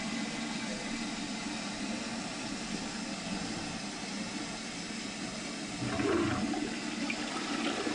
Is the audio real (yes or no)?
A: yes